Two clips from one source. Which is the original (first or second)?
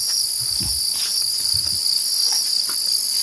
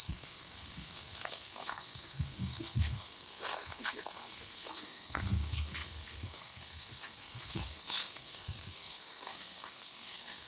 first